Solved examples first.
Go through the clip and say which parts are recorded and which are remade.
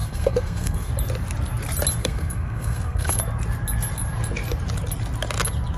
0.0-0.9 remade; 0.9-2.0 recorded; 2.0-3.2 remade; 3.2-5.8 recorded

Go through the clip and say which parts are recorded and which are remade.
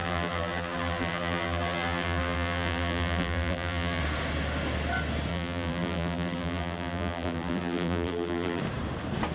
0.0-4.0 remade; 4.0-5.3 recorded; 5.3-8.6 remade; 8.6-9.3 recorded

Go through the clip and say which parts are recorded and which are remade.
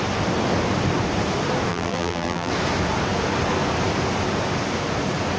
0.0-1.7 recorded; 1.7-2.5 remade; 2.5-5.4 recorded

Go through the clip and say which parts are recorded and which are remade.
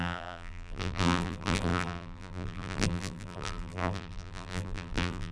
0.0-5.3 remade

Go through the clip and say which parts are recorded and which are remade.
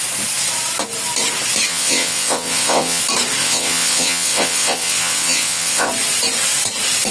0.0-1.7 recorded; 1.7-3.0 remade; 3.0-3.4 recorded; 3.4-5.9 remade; 5.9-7.1 recorded